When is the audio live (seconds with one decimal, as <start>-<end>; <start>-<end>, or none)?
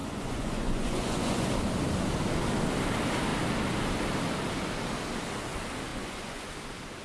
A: 1.5-5.9; 6.5-7.0